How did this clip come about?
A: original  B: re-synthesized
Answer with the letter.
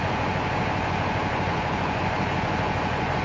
B